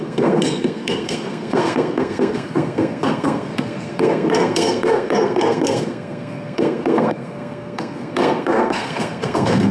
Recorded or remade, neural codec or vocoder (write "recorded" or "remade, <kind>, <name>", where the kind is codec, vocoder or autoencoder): remade, codec, SNAC